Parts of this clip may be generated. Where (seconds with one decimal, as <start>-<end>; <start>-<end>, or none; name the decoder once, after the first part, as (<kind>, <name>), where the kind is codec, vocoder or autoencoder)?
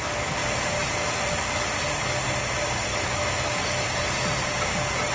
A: 2.9-4.0 (autoencoder, DAC-VAE)